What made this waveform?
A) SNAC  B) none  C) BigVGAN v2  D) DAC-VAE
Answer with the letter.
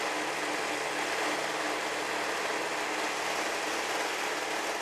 B